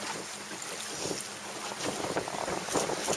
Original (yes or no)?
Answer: yes